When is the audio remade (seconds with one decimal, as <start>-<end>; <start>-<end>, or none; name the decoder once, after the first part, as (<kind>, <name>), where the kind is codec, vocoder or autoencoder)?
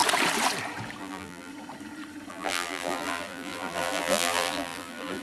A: 1.0-1.5 (vocoder, BigVGAN v2); 2.3-5.2